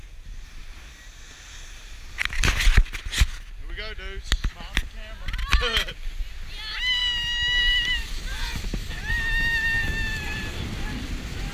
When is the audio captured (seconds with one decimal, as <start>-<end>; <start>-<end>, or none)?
0.0-11.5